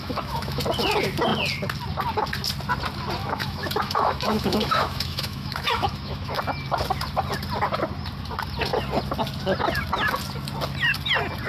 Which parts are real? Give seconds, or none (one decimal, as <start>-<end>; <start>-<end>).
0.6-3.2; 6.4-11.5